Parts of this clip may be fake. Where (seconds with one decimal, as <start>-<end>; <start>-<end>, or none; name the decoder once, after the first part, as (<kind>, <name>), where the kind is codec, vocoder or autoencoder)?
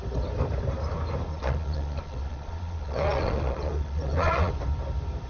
1.3-4.5 (vocoder, Vocos)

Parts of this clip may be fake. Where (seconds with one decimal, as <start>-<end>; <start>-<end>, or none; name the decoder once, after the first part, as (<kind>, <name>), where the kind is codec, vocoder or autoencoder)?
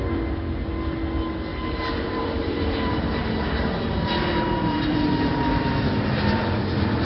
1.5-5.7 (vocoder, BigVGAN v2)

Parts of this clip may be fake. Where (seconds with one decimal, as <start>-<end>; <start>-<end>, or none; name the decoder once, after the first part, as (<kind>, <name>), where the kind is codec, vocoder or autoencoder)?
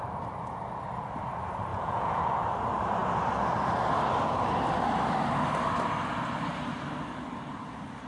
1.7-2.2 (vocoder, Vocos)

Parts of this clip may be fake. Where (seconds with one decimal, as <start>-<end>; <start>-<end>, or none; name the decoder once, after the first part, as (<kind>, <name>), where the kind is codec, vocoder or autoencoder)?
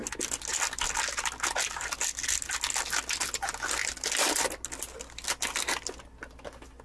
none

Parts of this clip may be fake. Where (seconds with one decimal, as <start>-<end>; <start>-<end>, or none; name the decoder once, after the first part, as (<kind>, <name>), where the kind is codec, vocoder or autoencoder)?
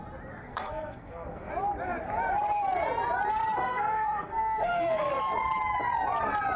0.4-1.5 (codec, SNAC); 3.6-5.2